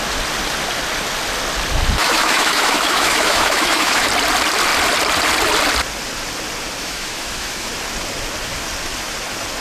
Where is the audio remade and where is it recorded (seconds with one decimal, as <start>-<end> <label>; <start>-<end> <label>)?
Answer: 0.0-2.0 recorded; 2.0-4.1 remade; 4.1-6.8 recorded; 6.8-7.7 remade; 7.7-9.6 recorded